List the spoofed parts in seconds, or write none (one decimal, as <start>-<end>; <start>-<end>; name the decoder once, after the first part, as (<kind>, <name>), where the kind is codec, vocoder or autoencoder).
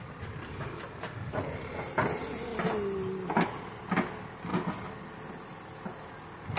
none